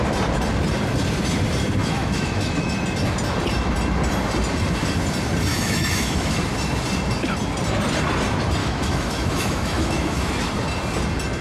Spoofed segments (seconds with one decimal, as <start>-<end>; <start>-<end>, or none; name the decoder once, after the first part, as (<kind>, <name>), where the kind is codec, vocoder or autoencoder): 1.8-2.7 (autoencoder, DAC-VAE); 5.5-6.4; 8.6-10.3